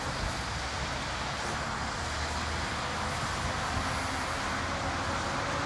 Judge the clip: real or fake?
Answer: real